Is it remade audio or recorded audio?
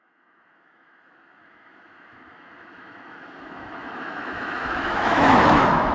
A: remade